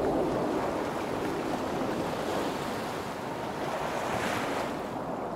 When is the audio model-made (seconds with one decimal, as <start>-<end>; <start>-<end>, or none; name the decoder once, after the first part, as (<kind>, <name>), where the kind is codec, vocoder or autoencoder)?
none